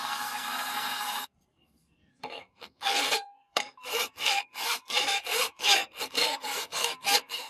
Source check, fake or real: fake